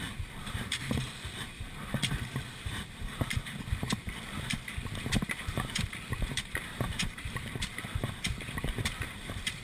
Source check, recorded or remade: remade